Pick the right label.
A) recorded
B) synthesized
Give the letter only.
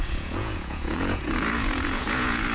B